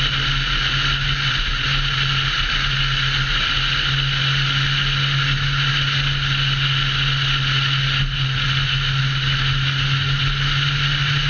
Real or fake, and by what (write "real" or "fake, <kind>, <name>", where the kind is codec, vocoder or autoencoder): real